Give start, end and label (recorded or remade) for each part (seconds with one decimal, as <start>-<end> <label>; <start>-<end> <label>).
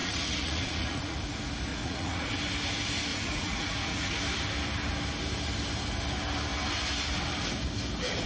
0.0-1.2 remade; 1.2-1.7 recorded; 1.7-2.3 remade; 2.3-3.1 recorded; 3.1-4.2 remade; 4.2-8.3 recorded